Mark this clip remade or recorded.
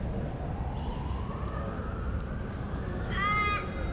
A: recorded